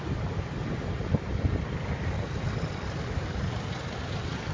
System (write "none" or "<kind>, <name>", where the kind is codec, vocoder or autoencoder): none